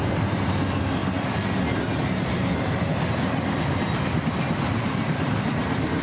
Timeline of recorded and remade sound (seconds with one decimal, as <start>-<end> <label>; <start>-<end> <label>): 0.0-0.6 remade; 0.6-6.0 recorded